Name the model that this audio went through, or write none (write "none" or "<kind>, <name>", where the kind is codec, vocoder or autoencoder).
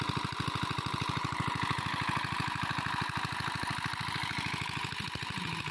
none